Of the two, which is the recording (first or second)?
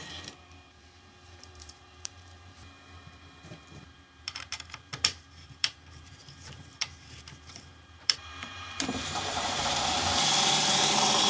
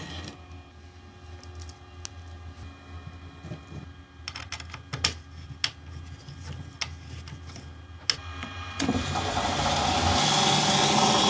second